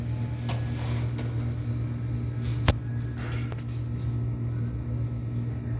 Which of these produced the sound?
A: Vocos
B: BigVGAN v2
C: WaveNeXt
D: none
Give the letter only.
D